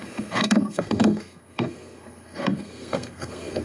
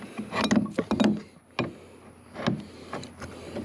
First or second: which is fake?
first